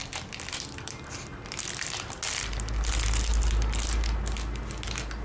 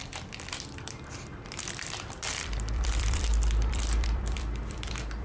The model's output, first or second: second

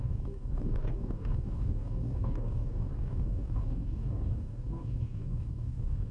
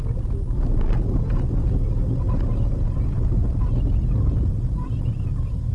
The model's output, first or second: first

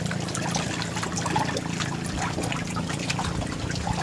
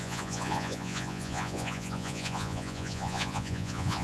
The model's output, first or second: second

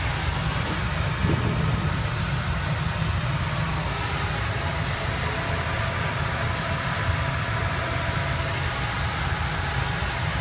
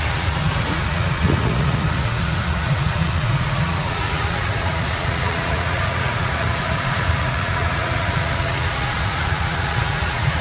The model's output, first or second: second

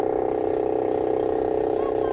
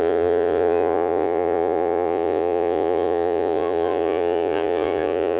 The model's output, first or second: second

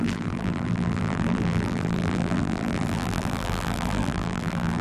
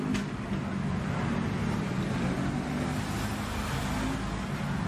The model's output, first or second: first